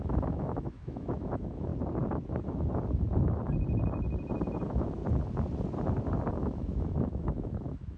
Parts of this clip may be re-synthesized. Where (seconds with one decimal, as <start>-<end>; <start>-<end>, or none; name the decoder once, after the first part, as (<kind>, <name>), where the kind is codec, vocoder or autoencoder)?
0.0-1.7 (autoencoder, DAC-VAE); 4.6-5.0; 6.3-8.0